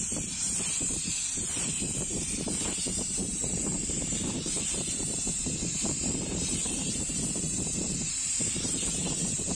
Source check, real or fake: fake